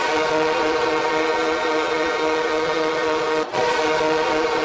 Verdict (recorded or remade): remade